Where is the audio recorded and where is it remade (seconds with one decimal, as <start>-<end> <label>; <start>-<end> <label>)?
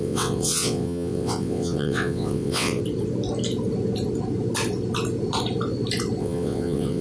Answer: 0.0-2.8 remade; 2.8-6.2 recorded; 6.2-7.0 remade